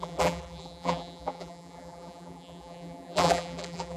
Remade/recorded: remade